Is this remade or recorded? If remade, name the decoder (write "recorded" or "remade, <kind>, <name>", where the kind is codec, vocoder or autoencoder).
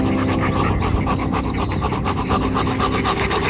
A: recorded